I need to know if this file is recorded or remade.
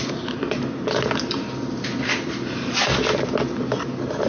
recorded